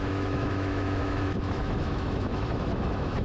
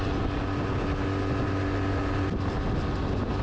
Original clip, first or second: second